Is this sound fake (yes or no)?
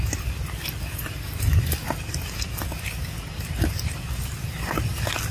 no